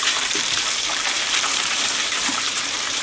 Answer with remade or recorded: remade